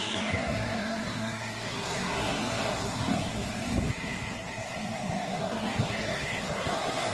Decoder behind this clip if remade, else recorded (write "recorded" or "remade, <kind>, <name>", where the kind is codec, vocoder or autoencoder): remade, codec, SNAC